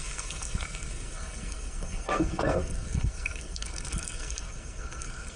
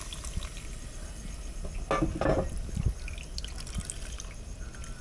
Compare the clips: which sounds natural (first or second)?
second